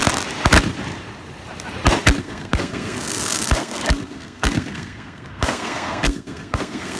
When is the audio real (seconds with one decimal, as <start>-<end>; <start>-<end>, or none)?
0.0-2.2